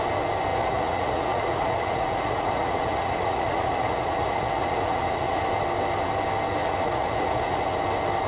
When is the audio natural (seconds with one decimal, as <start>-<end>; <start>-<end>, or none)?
0.0-0.5; 5.4-6.6; 7.8-8.3